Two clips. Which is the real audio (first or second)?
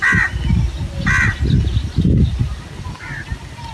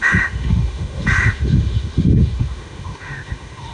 first